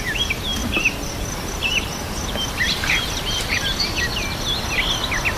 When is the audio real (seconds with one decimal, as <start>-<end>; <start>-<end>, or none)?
0.0-0.6; 3.8-5.4